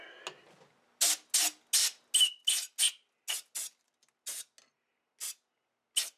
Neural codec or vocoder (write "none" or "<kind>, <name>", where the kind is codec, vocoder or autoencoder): none